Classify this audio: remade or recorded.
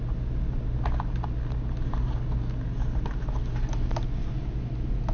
recorded